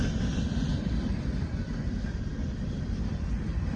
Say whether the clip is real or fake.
fake